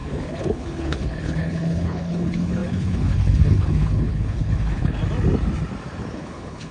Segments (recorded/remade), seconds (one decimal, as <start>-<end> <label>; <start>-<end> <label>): 0.0-5.0 remade; 5.0-6.1 recorded; 6.1-6.7 remade